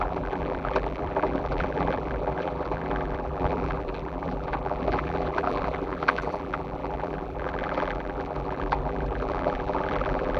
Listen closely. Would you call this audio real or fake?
fake